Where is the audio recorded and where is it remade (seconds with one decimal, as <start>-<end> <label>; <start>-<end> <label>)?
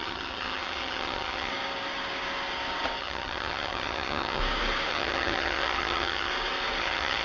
0.0-1.5 remade; 1.5-3.0 recorded; 3.0-4.4 remade; 4.4-4.9 recorded; 4.9-6.3 remade; 6.3-6.8 recorded; 6.8-7.2 remade